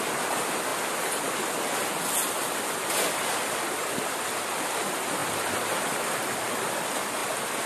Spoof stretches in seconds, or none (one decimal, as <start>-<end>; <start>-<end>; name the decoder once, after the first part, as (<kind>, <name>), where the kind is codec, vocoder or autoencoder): none